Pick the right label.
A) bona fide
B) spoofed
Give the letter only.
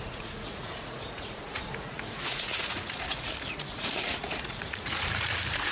B